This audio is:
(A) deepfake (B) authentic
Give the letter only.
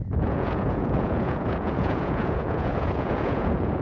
A